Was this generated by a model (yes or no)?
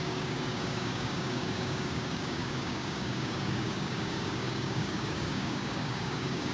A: yes